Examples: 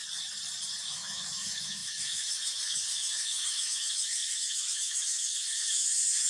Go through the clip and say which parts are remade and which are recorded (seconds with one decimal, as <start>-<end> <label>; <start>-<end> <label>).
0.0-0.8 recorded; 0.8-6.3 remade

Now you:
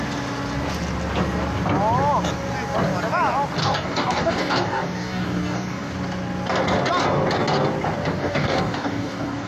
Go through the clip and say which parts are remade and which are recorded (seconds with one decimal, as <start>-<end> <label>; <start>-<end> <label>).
0.0-3.6 recorded; 3.6-5.9 remade; 5.9-8.2 recorded; 8.2-9.5 remade

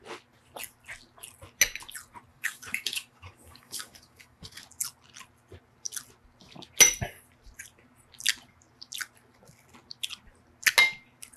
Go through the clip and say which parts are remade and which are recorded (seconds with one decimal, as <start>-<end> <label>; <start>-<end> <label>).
0.0-2.3 recorded; 2.3-4.6 remade; 4.6-11.4 recorded